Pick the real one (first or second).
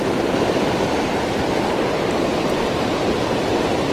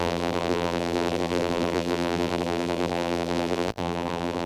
first